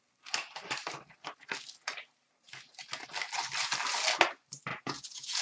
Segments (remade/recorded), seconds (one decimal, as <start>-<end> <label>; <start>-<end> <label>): 0.0-4.7 recorded; 4.7-5.4 remade